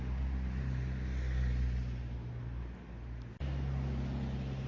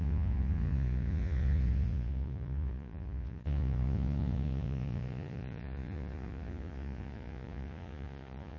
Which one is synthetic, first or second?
second